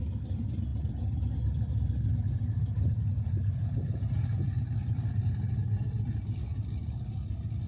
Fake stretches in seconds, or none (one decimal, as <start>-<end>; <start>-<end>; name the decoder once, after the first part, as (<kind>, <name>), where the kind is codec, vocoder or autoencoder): 0.7-5.3 (vocoder, BigVGAN v2); 6.5-7.7